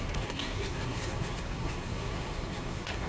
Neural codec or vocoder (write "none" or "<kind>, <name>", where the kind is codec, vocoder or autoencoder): codec, SNAC